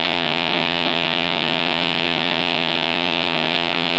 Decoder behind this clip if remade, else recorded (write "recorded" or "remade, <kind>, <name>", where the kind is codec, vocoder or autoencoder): remade, vocoder, HiFi-GAN